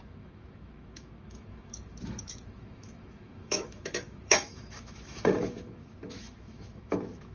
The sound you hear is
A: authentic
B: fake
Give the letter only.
B